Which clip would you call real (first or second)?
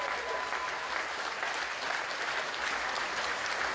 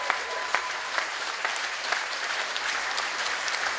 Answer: first